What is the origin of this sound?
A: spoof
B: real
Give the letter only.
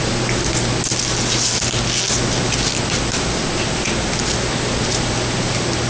B